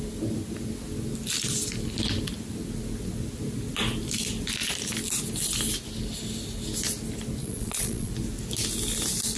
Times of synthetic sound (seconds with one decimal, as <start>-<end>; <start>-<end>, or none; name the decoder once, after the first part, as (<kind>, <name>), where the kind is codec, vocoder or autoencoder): 7.4-8.1 (vocoder, Vocos)